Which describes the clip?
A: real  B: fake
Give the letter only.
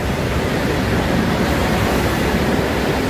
A